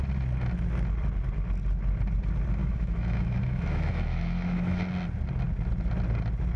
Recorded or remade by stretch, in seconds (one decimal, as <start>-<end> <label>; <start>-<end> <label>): 0.0-2.6 recorded; 2.6-4.8 remade; 4.8-6.6 recorded